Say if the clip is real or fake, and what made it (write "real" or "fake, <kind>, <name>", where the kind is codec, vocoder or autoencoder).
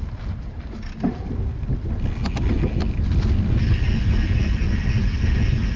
real